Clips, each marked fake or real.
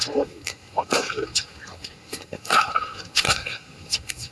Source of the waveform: fake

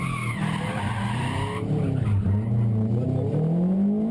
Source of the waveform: real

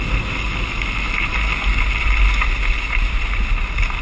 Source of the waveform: real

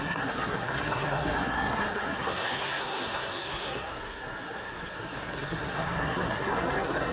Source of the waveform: fake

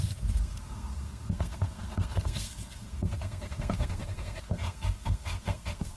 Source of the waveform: fake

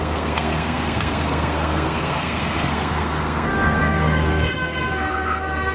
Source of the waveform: fake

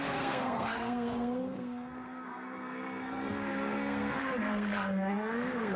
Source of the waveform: fake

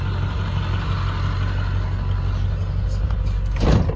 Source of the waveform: real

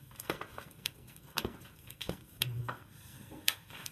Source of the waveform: fake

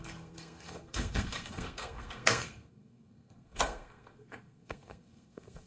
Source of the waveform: fake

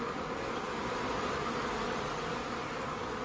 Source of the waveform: real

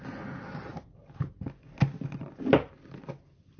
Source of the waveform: real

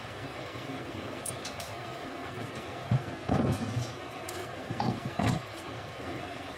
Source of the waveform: fake